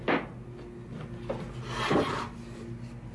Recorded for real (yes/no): yes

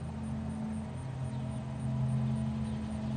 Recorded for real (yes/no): yes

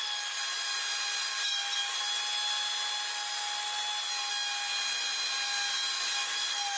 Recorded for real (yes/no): yes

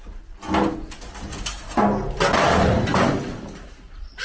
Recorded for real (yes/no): yes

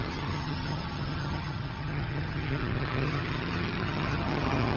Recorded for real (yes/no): no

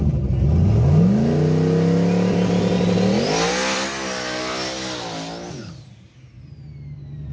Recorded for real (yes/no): yes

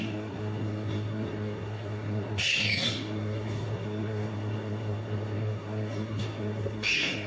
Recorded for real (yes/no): no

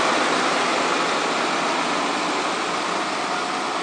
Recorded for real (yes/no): yes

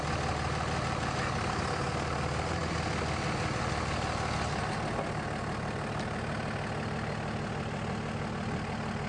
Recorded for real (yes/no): yes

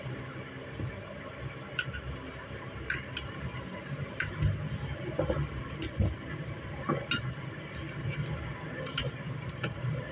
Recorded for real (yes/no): yes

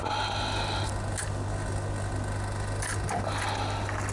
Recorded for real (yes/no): yes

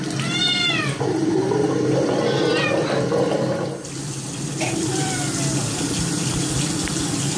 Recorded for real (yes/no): no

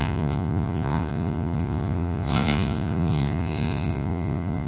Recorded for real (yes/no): no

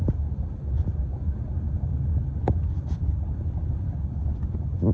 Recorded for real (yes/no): yes